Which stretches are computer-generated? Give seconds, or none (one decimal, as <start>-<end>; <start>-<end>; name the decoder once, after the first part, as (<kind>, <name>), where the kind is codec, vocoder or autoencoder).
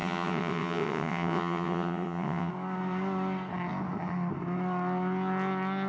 0.0-2.5 (vocoder, WaveNeXt)